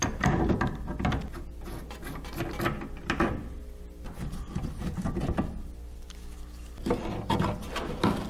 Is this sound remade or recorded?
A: recorded